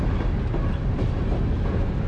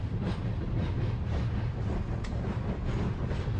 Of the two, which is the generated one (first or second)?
second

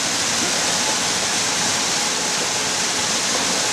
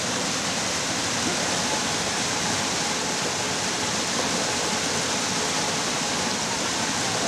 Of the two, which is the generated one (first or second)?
second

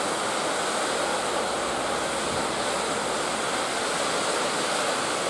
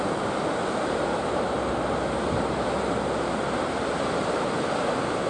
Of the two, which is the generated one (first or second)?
second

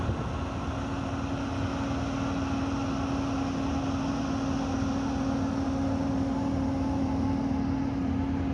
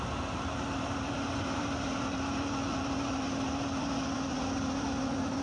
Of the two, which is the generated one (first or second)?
second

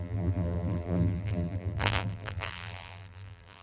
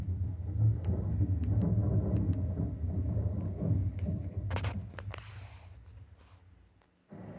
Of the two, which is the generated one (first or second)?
first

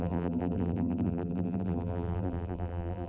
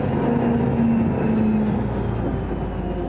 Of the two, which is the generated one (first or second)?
first